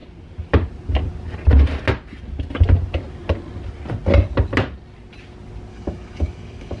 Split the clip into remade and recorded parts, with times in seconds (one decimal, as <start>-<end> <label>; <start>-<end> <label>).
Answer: 0.0-5.7 recorded; 5.7-6.8 remade